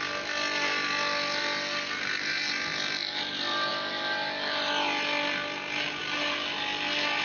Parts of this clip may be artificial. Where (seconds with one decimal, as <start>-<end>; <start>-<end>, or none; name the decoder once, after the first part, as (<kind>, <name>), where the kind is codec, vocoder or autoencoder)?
none